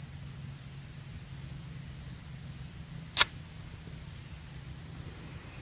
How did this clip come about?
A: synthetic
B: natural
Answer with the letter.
B